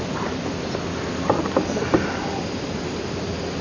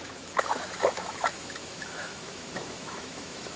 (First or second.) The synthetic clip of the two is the second